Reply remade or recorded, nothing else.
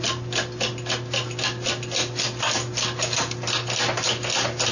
recorded